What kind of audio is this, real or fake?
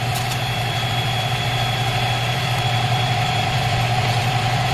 fake